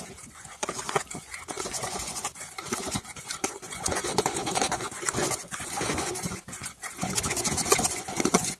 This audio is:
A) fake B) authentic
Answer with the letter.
A